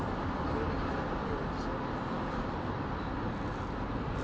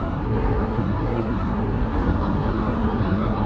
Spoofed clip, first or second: second